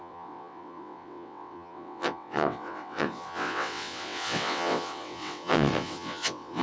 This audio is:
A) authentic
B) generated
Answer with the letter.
B